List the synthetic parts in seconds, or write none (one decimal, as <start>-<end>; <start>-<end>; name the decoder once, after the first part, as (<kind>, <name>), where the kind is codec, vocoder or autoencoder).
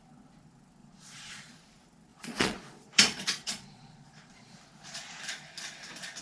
0.8-1.5 (vocoder, Vocos); 2.1-4.6